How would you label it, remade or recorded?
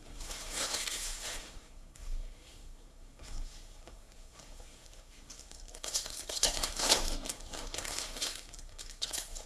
remade